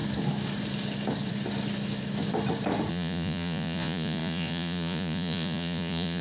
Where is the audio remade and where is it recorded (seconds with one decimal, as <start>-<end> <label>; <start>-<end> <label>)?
0.0-2.9 recorded; 2.9-6.2 remade